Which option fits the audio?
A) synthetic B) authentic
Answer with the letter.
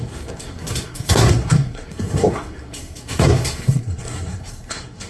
A